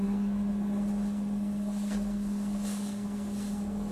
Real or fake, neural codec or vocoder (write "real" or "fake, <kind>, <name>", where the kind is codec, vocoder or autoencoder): fake, codec, SNAC